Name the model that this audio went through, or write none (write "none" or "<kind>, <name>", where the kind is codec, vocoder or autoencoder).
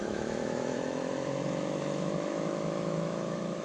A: autoencoder, DAC-VAE